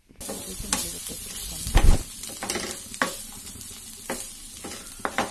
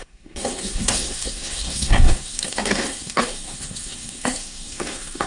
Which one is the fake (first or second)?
second